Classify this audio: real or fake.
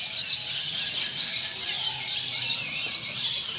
real